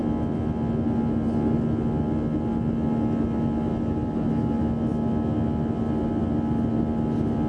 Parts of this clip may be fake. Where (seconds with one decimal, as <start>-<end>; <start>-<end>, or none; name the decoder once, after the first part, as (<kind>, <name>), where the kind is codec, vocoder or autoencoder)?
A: none